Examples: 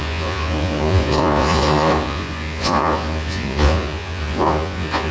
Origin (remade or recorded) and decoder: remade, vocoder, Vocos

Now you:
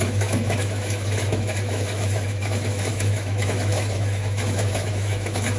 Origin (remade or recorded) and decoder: remade, autoencoder, DAC-VAE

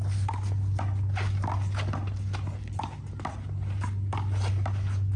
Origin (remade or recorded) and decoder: recorded